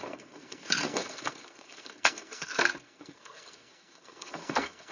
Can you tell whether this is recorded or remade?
remade